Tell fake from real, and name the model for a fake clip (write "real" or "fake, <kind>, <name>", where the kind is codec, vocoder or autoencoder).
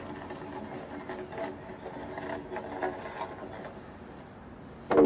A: real